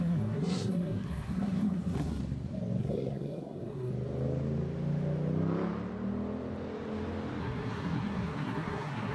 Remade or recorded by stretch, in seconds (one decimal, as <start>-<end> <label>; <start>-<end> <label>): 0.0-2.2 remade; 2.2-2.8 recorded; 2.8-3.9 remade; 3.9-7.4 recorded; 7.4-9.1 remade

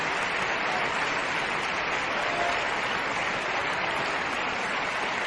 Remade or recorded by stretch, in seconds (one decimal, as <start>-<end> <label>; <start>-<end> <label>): 0.0-5.3 recorded

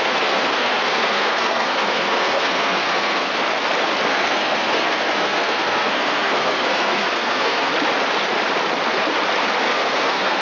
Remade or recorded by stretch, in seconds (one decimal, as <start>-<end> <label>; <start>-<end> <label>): 0.0-3.3 remade; 3.3-4.1 recorded; 4.1-7.7 remade; 7.7-9.6 recorded; 9.6-10.4 remade

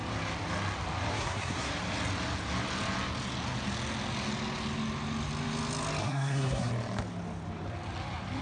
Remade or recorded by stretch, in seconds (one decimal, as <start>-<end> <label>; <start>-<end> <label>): 0.0-1.1 recorded; 1.1-1.7 remade; 1.7-6.0 recorded; 6.0-6.7 remade; 6.7-8.4 recorded

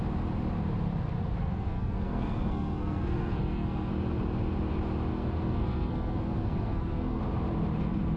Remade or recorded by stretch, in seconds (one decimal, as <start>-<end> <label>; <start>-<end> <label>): 0.0-1.4 recorded; 1.4-3.9 remade; 3.9-5.1 recorded; 5.1-7.2 remade; 7.2-8.2 recorded